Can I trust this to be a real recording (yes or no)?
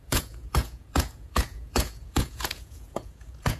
no